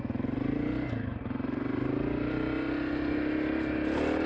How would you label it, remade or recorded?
recorded